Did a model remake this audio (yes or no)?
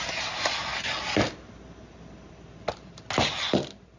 no